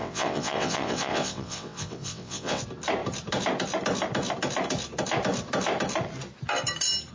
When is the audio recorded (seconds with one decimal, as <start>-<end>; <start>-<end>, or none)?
2.6-7.1